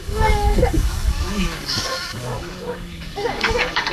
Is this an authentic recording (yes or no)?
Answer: no